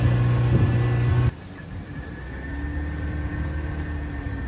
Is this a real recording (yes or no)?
yes